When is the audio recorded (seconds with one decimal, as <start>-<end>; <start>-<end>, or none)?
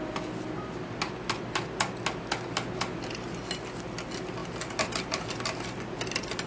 0.0-6.5